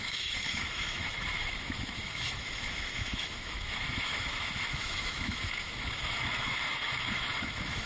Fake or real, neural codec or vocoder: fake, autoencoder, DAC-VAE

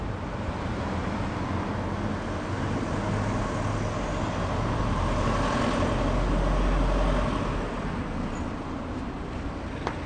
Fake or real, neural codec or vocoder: real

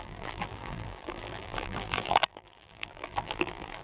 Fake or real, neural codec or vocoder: fake, vocoder, BigVGAN v2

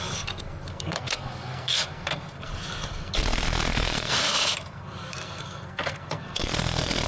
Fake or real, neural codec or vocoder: fake, codec, SNAC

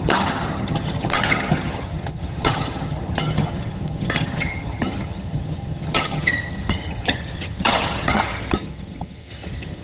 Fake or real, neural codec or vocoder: fake, vocoder, HiFi-GAN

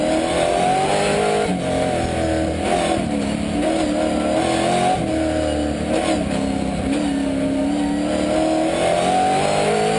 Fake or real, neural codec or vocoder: real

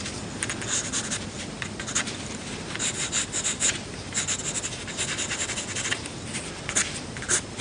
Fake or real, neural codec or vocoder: real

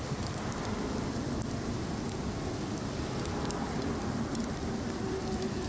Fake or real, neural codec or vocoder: real